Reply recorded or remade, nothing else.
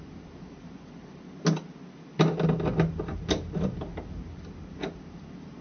recorded